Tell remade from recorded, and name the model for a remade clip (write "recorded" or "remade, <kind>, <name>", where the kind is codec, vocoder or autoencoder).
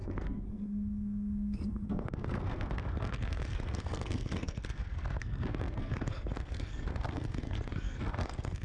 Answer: remade, codec, SNAC